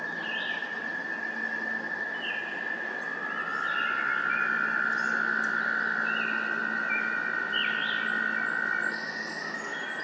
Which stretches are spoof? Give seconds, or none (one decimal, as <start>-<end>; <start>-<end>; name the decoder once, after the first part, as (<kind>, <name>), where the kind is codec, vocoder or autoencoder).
none